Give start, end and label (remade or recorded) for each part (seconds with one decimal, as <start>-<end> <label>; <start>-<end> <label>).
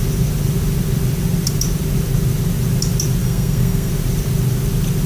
0.0-3.2 recorded; 3.2-3.9 remade; 3.9-5.1 recorded